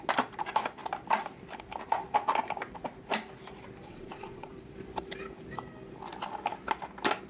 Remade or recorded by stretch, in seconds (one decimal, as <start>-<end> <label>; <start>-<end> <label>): 0.0-3.9 recorded; 3.9-4.5 remade; 4.5-7.3 recorded